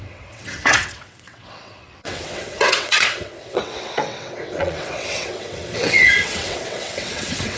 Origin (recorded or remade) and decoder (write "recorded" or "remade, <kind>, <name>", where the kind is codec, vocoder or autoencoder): remade, vocoder, WaveNeXt